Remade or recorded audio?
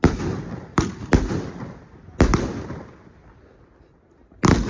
recorded